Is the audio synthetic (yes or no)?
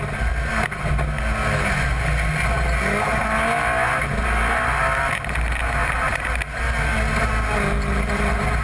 no